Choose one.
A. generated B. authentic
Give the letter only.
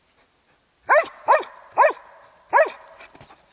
B